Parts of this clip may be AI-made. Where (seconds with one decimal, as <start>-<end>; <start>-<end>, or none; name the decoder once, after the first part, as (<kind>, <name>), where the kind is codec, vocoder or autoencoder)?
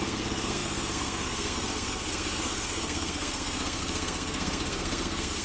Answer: 0.0-5.4 (codec, SNAC)